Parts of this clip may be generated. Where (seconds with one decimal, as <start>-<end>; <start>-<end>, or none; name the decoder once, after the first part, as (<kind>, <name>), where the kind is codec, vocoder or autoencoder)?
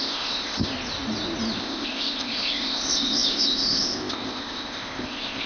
0.0-0.7 (codec, ZipCodec); 1.6-5.5